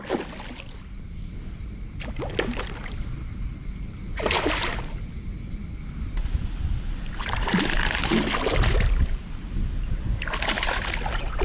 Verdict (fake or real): real